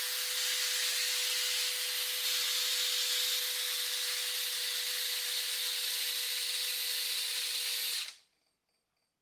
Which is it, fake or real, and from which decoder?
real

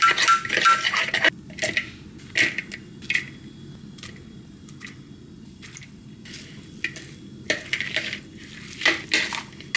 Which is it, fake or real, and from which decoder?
real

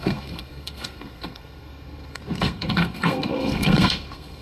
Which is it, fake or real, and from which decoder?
fake, codec, SNAC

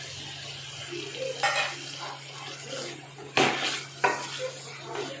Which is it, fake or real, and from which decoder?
real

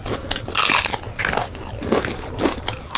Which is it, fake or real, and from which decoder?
real